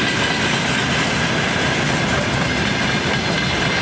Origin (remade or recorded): recorded